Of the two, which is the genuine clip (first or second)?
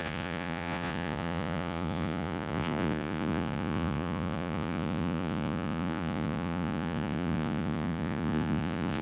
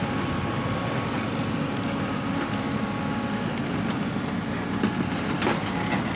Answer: second